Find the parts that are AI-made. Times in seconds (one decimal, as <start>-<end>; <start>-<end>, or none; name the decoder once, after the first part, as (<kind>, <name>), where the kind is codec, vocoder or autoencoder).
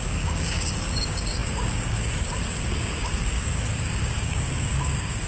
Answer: 0.0-5.3 (codec, DAC)